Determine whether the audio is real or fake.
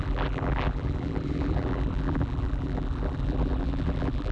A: fake